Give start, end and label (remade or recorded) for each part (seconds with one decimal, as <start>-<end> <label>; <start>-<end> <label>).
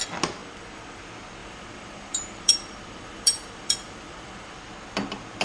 0.0-0.4 recorded; 0.4-1.0 remade; 1.0-1.4 recorded; 1.4-4.6 remade; 4.6-5.4 recorded